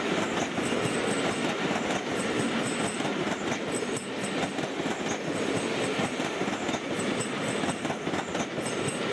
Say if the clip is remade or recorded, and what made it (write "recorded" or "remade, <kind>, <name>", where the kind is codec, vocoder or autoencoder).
recorded